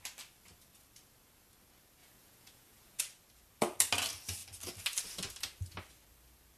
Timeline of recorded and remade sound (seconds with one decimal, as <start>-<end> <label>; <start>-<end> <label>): 0.0-2.0 recorded; 2.0-3.0 remade; 3.0-6.6 recorded